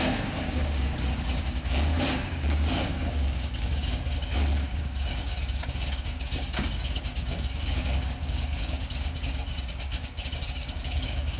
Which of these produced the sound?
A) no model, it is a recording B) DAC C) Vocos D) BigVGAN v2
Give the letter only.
B